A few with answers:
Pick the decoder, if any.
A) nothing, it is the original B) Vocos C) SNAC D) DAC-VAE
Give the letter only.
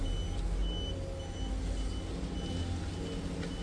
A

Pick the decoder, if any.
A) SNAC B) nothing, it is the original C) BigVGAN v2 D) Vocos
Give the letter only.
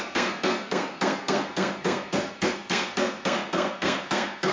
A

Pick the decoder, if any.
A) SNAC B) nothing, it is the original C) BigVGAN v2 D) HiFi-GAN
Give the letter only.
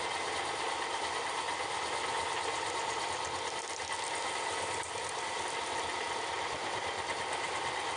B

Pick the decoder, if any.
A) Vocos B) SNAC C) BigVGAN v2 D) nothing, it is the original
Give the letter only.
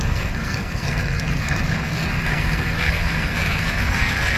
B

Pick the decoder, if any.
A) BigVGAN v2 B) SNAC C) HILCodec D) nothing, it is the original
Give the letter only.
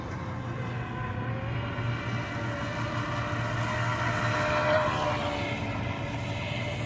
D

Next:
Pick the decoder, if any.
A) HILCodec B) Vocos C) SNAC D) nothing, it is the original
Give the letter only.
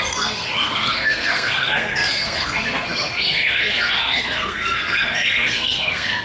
C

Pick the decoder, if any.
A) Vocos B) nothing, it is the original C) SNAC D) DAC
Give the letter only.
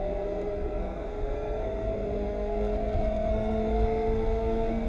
C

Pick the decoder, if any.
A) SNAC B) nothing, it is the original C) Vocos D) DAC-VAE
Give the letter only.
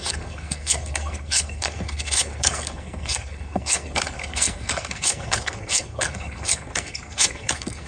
A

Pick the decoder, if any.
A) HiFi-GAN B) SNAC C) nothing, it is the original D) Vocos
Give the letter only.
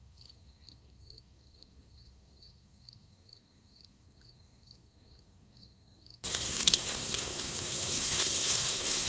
B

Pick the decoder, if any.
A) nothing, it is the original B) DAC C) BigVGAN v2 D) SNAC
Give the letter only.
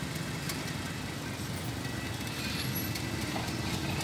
A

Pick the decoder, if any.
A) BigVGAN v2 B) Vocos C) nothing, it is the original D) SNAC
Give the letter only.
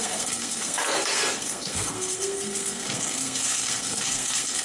D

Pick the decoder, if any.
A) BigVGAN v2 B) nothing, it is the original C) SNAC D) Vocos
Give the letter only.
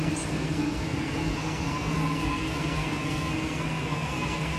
C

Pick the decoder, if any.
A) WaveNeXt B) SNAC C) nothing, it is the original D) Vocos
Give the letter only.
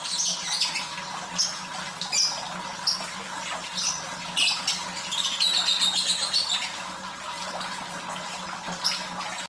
C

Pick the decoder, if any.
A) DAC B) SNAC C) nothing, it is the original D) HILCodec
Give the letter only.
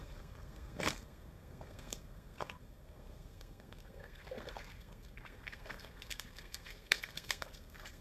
B